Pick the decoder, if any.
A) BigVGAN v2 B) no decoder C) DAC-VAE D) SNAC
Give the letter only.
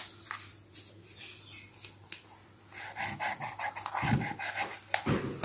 B